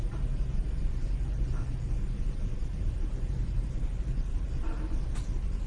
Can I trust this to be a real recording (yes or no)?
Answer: no